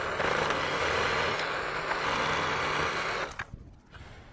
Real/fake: real